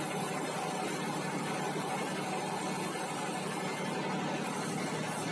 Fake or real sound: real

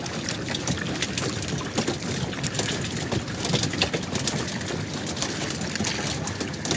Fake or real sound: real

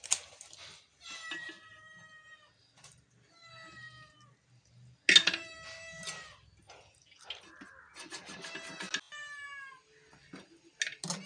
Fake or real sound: real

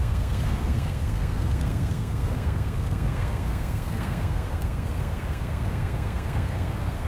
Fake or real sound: fake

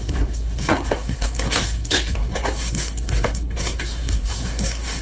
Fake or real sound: fake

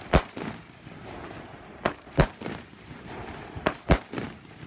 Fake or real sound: real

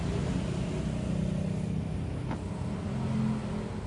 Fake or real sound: real